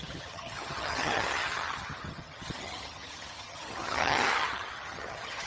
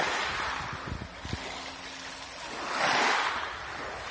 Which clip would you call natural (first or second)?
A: second